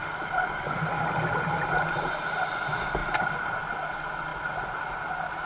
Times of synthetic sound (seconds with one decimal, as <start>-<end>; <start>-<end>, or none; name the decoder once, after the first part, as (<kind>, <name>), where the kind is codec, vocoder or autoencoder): none